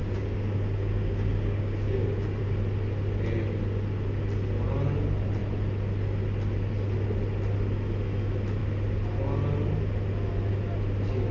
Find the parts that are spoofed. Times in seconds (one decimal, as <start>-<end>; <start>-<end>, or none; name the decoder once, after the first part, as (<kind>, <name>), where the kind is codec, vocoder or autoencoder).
0.0-2.4 (codec, DAC)